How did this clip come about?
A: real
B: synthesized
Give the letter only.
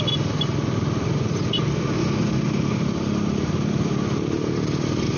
A